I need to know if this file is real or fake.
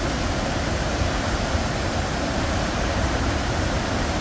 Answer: real